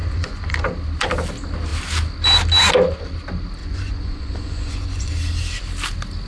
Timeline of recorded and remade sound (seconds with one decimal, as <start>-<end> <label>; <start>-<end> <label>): 0.0-0.5 remade; 0.5-3.6 recorded; 3.6-5.1 remade; 5.1-6.3 recorded